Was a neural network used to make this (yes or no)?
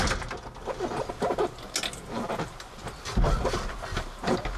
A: no